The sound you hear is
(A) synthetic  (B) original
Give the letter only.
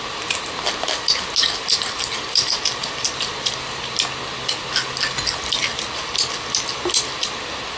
B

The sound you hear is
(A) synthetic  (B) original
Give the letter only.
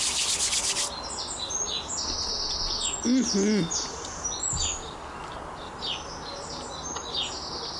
B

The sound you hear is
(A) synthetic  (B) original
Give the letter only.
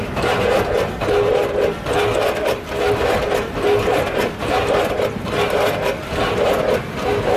B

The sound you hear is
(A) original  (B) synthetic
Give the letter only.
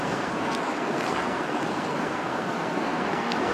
B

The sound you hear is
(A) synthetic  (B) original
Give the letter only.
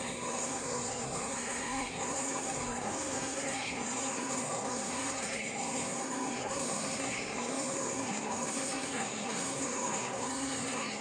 A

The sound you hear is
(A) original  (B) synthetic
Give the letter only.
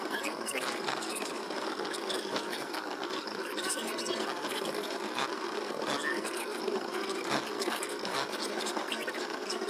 B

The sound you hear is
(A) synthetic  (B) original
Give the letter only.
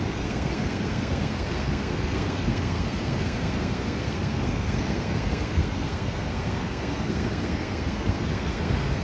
A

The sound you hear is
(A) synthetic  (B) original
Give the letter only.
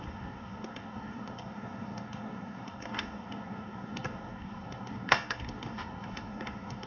A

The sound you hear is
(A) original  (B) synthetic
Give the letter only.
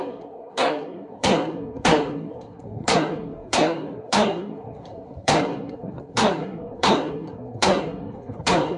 B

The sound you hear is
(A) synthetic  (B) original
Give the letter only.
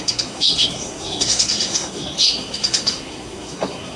A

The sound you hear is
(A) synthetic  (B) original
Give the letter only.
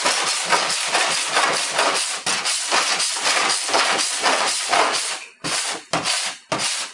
B